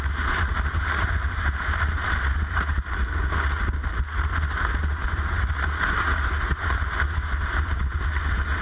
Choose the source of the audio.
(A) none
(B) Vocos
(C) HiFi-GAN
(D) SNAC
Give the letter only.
A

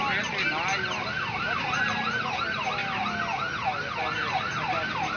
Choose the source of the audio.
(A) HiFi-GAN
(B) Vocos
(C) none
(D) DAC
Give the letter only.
C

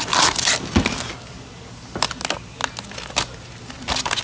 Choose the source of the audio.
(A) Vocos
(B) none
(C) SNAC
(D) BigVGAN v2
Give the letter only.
B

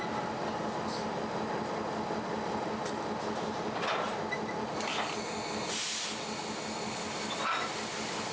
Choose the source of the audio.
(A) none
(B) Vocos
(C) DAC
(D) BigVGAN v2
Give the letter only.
A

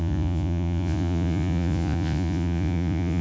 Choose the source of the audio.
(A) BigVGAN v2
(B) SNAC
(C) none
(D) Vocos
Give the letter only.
D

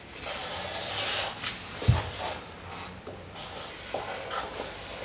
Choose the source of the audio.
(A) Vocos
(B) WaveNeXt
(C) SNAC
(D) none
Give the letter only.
D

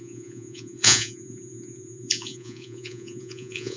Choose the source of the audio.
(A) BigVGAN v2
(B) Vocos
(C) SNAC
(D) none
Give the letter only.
B